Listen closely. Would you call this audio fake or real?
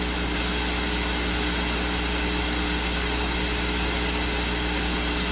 real